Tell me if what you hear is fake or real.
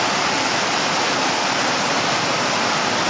real